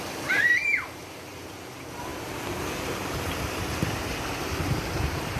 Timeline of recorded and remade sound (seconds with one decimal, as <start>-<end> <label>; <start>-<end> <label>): 0.0-5.4 recorded